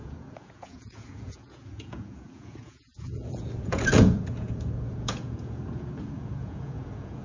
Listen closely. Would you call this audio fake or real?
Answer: fake